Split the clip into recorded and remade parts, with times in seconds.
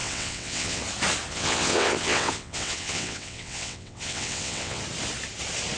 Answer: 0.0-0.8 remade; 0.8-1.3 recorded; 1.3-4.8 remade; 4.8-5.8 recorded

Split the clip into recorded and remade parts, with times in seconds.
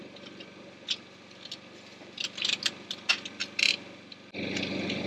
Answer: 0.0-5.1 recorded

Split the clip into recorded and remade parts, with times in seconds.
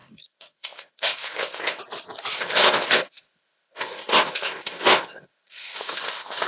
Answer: 0.0-1.8 remade; 1.8-2.4 recorded; 2.4-6.5 remade